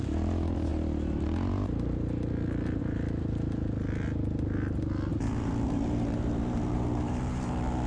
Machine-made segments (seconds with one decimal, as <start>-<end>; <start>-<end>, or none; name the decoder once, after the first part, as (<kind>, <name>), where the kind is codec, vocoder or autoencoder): 5.1-7.5 (vocoder, BigVGAN v2)